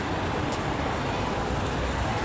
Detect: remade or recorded recorded